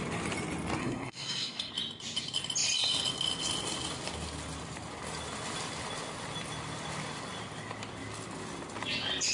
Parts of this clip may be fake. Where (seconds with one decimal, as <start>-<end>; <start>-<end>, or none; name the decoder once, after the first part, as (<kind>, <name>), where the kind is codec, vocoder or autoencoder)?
0.8-1.7 (codec, SNAC)